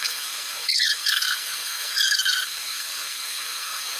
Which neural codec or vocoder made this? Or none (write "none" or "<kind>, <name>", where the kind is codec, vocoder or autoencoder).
codec, SNAC